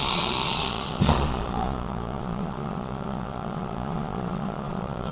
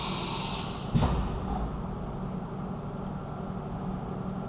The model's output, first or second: first